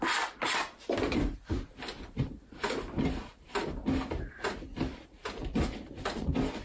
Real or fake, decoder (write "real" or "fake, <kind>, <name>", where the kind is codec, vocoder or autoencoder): real